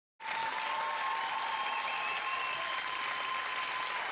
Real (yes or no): yes